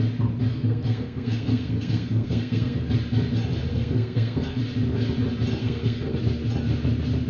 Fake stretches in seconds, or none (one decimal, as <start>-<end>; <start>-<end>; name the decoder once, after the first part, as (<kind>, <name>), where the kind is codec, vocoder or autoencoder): 0.5-2.8 (codec, SNAC); 3.7-4.6; 5.6-6.2